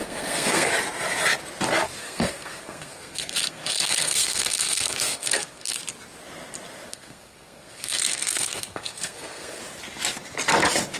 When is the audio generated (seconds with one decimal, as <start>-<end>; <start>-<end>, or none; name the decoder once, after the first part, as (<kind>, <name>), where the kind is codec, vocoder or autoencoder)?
0.0-0.7 (codec, SNAC); 2.0-5.8; 6.9-9.6